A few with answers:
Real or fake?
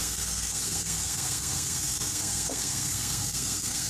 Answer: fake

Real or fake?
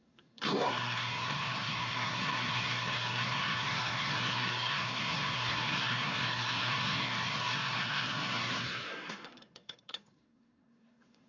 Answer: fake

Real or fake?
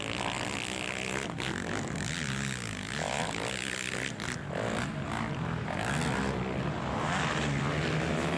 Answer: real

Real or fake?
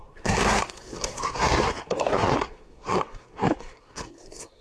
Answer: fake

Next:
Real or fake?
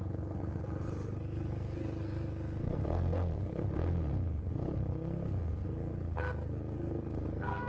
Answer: fake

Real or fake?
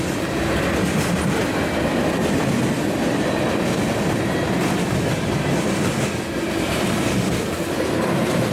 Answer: real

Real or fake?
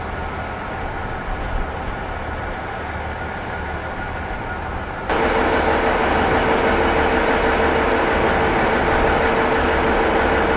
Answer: real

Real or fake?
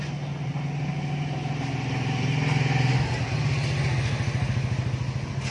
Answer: real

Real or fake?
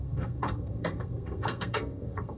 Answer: fake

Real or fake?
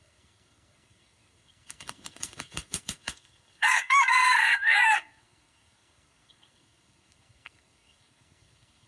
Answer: fake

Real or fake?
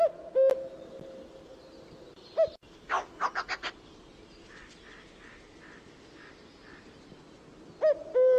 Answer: real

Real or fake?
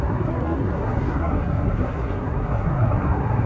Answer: fake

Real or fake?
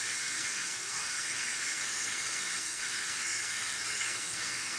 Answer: fake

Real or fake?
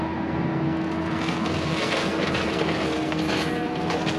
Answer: fake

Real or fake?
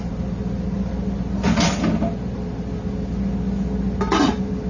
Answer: real